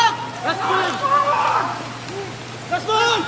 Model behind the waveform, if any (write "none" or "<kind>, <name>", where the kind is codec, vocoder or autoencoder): none